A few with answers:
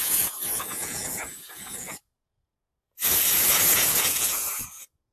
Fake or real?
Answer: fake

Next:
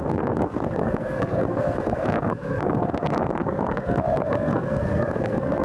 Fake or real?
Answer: fake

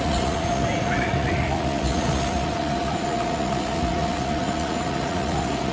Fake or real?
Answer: fake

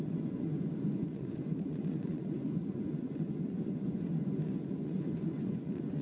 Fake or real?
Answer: fake